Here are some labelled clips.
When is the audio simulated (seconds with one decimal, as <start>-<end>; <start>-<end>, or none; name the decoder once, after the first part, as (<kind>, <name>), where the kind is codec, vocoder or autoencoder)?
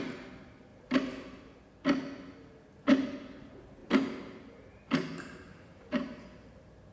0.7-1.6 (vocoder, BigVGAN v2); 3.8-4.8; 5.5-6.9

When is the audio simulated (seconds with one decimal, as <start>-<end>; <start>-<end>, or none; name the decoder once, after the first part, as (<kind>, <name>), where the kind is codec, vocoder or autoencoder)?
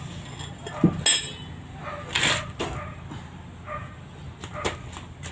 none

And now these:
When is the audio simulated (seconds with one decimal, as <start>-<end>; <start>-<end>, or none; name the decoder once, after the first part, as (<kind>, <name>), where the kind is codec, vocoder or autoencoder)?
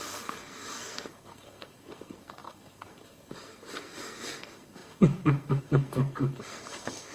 0.0-7.1 (codec, SNAC)